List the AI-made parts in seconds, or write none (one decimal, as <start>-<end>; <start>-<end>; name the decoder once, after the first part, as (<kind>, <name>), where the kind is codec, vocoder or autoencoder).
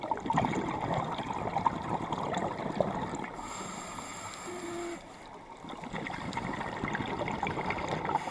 none